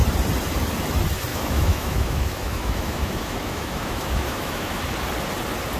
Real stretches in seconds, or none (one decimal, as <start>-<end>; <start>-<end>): 0.0-1.3; 4.8-5.8